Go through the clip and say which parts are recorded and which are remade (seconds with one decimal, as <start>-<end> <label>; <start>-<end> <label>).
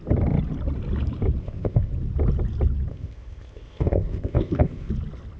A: 0.0-1.4 recorded; 1.4-1.9 remade; 1.9-2.9 recorded; 2.9-4.9 remade; 4.9-5.4 recorded